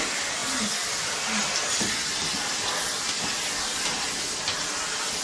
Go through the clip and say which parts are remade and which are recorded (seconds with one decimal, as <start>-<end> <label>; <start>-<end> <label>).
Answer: 0.0-5.2 recorded